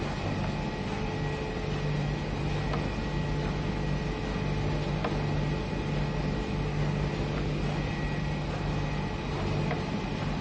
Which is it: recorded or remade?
recorded